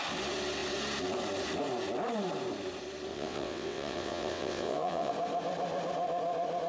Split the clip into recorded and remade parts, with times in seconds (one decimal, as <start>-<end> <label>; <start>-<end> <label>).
0.0-3.1 recorded; 3.1-5.1 remade; 5.1-6.7 recorded